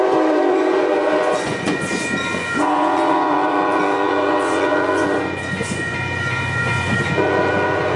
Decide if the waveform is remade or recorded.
remade